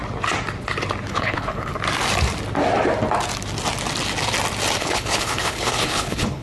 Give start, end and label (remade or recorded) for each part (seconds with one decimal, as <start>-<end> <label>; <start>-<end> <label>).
0.0-1.1 recorded; 1.1-1.7 remade; 1.7-4.8 recorded; 4.8-6.4 remade